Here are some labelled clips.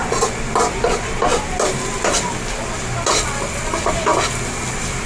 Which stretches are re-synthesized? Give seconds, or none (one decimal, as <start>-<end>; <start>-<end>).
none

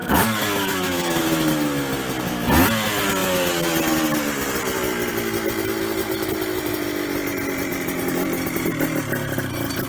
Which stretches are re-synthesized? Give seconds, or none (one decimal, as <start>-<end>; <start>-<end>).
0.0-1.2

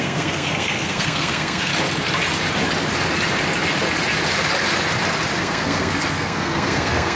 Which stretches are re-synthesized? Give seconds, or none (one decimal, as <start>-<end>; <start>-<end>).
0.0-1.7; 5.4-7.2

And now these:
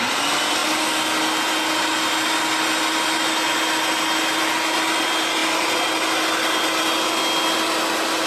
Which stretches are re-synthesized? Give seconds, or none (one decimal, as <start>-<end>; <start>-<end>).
none

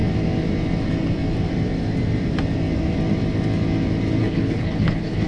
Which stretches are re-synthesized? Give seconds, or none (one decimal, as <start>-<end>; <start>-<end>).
4.2-5.3